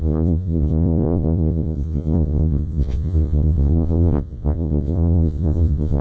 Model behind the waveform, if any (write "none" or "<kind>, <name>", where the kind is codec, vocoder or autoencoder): vocoder, Vocos